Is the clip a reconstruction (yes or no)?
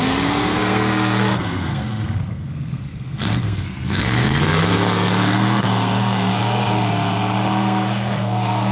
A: yes